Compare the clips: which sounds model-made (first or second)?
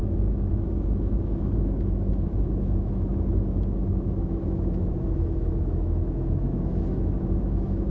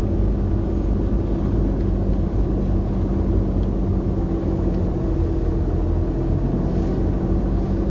first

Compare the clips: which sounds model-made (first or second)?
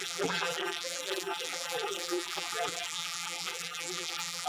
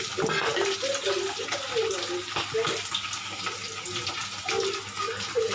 first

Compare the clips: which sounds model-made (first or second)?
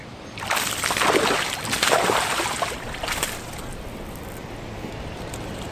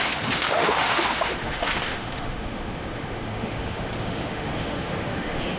second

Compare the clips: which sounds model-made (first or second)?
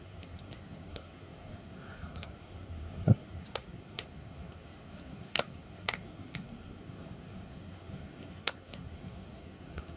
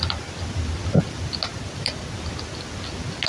first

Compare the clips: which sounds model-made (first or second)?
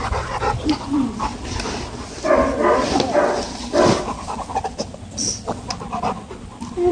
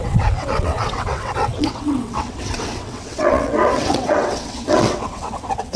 second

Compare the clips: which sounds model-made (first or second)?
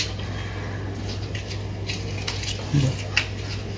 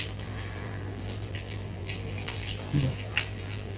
second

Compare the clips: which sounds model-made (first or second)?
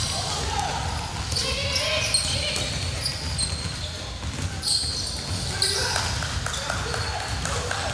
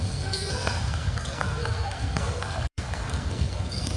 second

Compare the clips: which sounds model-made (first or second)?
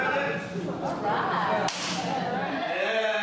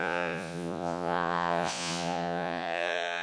second